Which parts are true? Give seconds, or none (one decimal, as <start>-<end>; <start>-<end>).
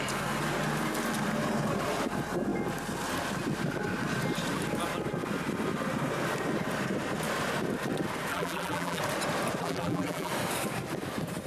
0.0-8.3; 9.0-9.6; 10.3-11.5